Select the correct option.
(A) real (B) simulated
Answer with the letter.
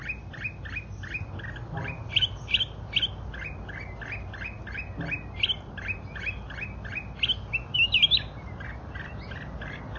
A